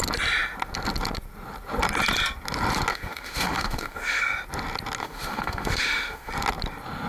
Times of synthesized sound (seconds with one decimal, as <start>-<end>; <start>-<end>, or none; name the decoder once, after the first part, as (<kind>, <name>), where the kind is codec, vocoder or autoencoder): 2.9-4.2 (autoencoder, DAC-VAE); 5.0-6.3